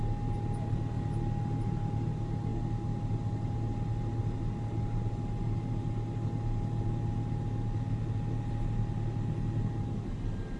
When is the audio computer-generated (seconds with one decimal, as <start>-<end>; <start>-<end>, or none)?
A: none